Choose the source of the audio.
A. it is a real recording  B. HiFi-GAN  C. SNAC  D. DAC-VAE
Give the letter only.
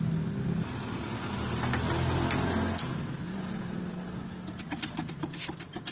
A